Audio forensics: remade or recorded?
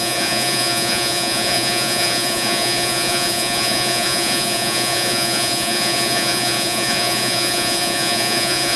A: remade